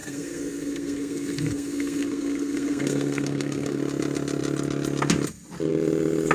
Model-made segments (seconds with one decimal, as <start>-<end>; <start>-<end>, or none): 0.0-3.8